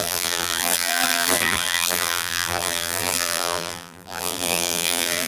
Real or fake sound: fake